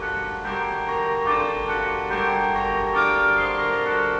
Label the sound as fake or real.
real